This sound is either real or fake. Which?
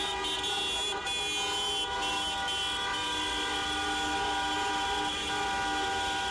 real